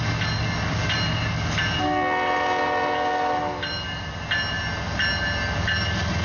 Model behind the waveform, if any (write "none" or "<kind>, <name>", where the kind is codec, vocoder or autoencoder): none